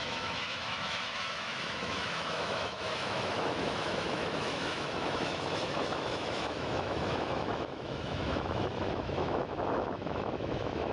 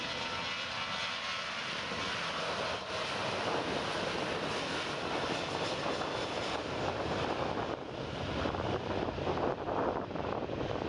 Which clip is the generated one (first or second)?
first